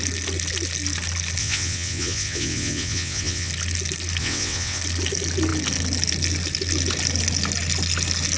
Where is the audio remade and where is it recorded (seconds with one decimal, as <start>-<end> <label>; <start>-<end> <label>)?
0.0-1.4 recorded; 1.4-3.5 remade; 3.5-4.2 recorded; 4.2-4.8 remade; 4.8-8.4 recorded